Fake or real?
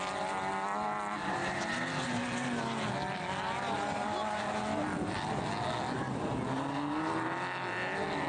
real